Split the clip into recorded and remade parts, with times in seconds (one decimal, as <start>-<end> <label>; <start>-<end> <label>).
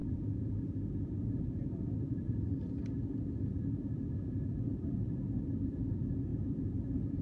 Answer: 0.0-2.4 remade; 2.4-3.5 recorded; 3.5-5.0 remade; 5.0-6.3 recorded; 6.3-7.2 remade